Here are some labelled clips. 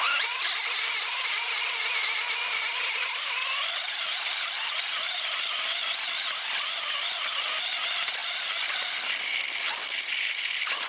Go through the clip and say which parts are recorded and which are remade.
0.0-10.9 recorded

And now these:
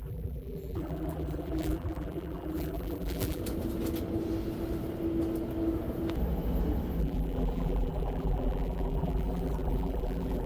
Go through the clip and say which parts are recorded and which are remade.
0.0-3.4 remade; 3.4-7.0 recorded; 7.0-10.5 remade